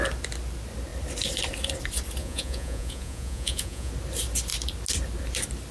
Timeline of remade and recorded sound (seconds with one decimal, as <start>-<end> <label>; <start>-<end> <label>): 0.0-2.2 recorded; 2.2-3.9 remade; 3.9-5.7 recorded